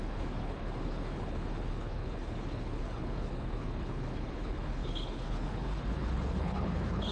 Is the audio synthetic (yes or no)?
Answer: yes